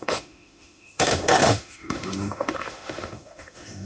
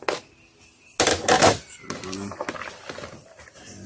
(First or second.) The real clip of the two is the second